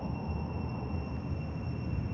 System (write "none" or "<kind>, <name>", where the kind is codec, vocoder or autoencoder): none